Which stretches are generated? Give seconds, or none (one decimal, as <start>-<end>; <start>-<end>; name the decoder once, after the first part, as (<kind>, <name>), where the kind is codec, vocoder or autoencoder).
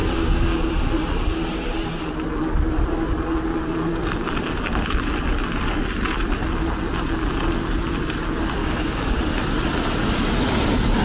0.0-0.7 (codec, DAC); 8.6-9.2